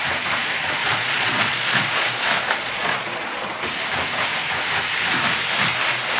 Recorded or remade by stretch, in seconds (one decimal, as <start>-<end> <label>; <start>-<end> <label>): 0.0-0.8 recorded; 0.8-2.2 remade; 2.2-2.6 recorded; 2.6-3.4 remade; 3.4-6.2 recorded